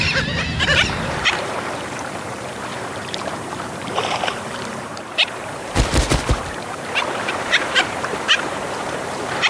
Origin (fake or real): fake